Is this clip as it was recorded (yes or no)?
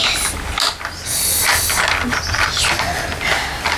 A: yes